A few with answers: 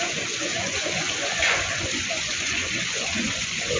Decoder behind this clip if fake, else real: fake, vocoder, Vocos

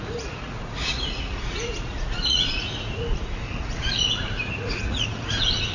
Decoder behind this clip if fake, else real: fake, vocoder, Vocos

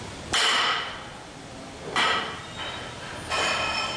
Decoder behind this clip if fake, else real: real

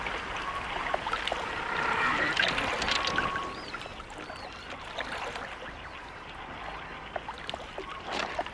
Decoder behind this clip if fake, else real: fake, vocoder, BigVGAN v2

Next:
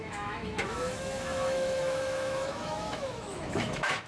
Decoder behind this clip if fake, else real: fake, autoencoder, DAC-VAE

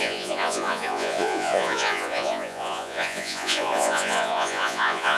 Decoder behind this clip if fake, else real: fake, vocoder, Vocos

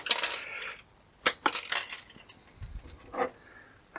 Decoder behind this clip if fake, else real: real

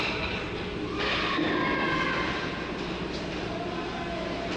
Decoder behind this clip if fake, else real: real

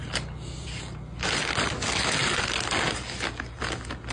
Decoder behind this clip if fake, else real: real